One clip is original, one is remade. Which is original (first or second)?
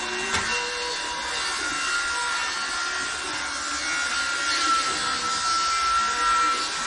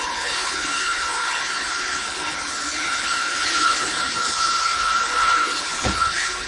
first